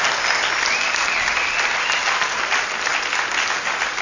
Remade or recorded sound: recorded